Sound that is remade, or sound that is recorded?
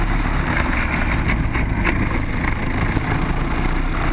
recorded